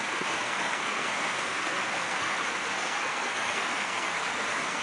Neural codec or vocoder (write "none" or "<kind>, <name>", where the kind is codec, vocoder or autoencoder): codec, SNAC